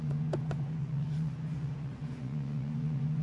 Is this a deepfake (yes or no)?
yes